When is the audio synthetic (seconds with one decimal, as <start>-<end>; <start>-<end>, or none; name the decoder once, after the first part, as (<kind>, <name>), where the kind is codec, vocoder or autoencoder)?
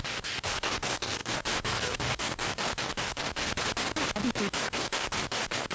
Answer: 0.0-3.5 (codec, DAC); 4.4-5.7